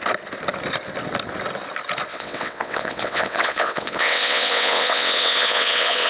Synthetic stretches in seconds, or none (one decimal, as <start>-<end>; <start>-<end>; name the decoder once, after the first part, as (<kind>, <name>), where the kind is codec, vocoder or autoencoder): 2.1-6.1 (vocoder, WaveNeXt)